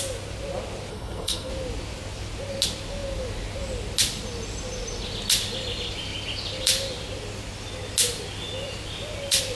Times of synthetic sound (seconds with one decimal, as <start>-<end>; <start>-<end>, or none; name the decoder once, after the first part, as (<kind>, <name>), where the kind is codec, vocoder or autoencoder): 0.9-1.5 (codec, SNAC)